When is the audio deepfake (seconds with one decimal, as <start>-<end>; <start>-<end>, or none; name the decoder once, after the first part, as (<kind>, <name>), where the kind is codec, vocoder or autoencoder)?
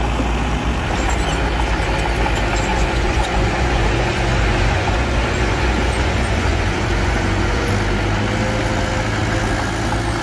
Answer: 2.7-7.7 (vocoder, Vocos)